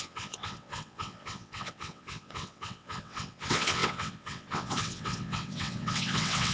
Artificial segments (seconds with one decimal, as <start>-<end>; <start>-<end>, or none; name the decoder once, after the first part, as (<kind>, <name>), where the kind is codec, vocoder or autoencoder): 0.0-6.5 (vocoder, WaveNeXt)